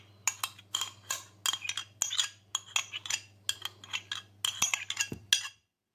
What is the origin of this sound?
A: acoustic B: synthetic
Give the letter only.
A